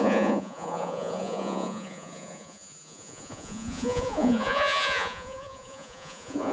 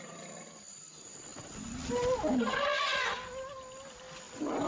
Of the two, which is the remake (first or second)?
first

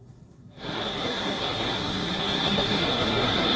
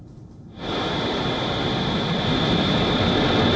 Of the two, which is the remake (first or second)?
first